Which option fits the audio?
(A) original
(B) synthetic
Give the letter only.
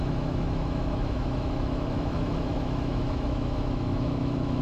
B